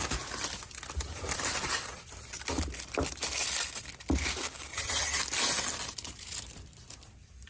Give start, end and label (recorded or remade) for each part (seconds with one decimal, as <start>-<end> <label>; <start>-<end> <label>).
0.0-4.7 recorded; 4.7-5.2 remade; 5.2-7.5 recorded